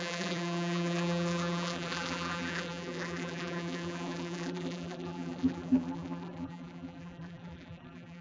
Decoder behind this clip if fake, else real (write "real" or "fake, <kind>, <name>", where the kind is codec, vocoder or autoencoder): fake, vocoder, BigVGAN v2